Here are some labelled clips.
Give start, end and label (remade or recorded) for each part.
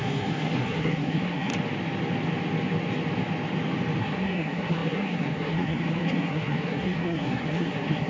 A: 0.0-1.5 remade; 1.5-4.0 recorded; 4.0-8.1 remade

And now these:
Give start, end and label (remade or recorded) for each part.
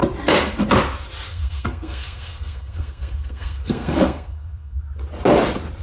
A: 0.0-1.3 recorded; 1.3-4.8 remade; 4.8-5.8 recorded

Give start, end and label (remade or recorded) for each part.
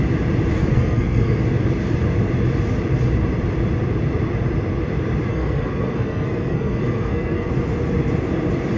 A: 0.0-0.6 recorded; 0.6-1.4 remade; 1.4-5.3 recorded; 5.3-7.5 remade; 7.5-8.8 recorded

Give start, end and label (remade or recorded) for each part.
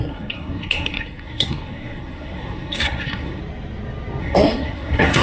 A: 0.0-3.4 remade; 3.4-4.2 recorded; 4.2-5.2 remade